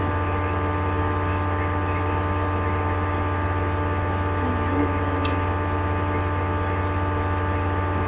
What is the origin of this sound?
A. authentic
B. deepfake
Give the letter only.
A